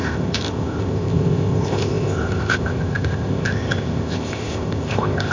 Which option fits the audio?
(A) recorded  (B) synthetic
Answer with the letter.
B